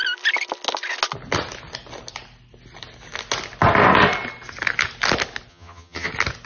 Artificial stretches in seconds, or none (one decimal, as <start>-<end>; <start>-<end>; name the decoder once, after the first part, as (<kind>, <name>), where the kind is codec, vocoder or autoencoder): 5.5-6.1 (vocoder, HiFi-GAN)